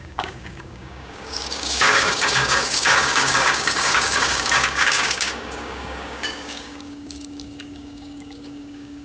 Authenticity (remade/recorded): remade